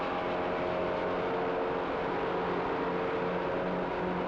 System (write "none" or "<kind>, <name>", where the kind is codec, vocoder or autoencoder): none